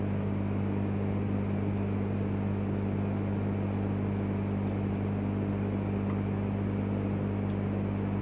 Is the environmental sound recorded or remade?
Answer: recorded